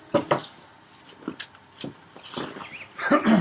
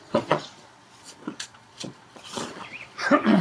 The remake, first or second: second